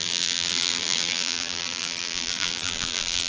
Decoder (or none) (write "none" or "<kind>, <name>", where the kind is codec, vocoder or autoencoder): vocoder, BigVGAN v2